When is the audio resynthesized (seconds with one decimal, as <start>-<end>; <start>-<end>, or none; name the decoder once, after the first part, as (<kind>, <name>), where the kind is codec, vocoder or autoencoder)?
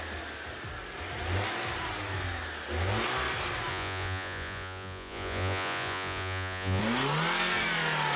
3.7-6.8 (vocoder, Vocos)